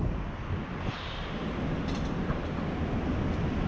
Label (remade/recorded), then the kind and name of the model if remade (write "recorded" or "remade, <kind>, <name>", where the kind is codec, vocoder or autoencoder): recorded